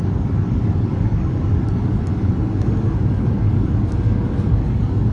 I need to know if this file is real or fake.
fake